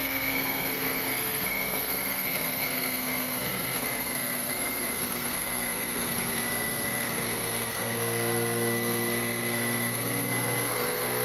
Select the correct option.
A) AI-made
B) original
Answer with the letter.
A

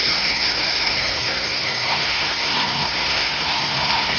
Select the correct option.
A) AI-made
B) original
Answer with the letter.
A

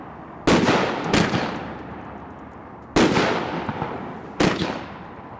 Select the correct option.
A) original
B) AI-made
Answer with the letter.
A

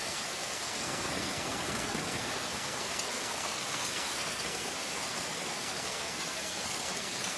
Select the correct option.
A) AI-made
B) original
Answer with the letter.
A